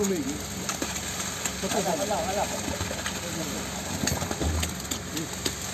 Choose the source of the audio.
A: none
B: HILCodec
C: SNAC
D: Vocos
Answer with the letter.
A